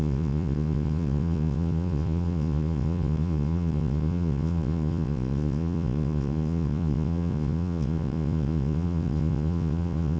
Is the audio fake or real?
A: fake